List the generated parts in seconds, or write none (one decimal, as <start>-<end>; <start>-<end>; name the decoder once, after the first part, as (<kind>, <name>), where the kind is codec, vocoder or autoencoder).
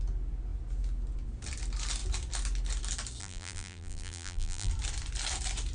3.2-4.7 (vocoder, BigVGAN v2)